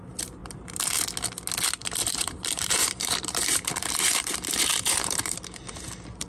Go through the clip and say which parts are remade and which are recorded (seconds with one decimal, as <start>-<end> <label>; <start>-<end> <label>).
0.0-0.4 recorded; 0.4-1.0 remade; 1.0-1.8 recorded; 1.8-5.6 remade; 5.6-6.3 recorded